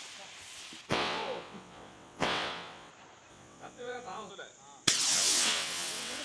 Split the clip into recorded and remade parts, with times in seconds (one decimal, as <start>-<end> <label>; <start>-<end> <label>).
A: 0.0-0.9 recorded; 0.9-2.9 remade; 2.9-3.3 recorded; 3.3-4.3 remade; 4.3-5.1 recorded; 5.1-6.2 remade